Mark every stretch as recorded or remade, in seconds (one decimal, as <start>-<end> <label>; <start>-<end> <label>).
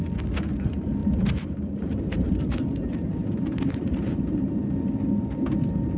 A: 0.0-1.0 recorded; 1.0-4.6 remade; 4.6-6.0 recorded